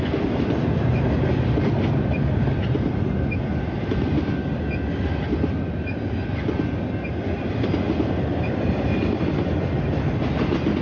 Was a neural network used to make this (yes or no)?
no